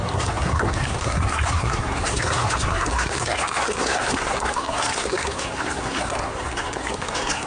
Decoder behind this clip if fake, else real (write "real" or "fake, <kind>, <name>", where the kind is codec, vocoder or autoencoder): fake, codec, SNAC